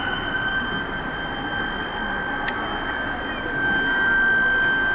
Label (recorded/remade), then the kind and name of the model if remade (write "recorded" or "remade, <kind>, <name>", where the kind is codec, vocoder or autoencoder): recorded